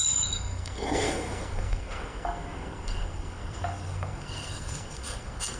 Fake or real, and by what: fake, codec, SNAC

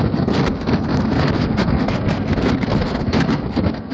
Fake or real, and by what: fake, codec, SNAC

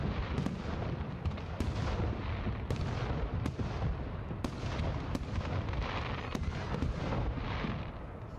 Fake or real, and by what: real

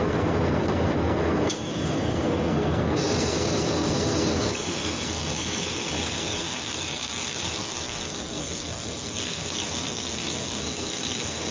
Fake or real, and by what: fake, codec, SNAC